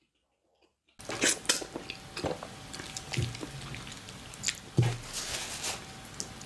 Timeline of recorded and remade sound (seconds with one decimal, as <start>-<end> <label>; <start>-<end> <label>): 0.0-6.5 recorded